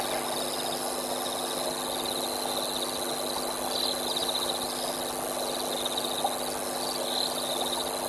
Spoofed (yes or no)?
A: no